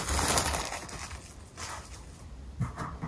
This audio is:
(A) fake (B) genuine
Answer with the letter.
B